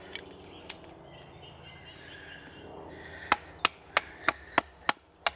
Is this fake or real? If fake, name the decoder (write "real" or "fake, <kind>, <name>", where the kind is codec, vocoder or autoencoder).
real